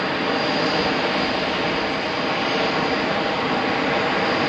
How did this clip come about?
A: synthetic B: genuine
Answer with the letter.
B